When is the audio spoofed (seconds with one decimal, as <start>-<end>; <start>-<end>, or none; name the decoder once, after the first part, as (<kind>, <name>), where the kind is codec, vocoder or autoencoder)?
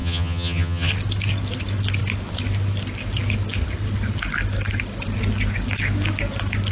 0.0-0.9 (vocoder, HiFi-GAN)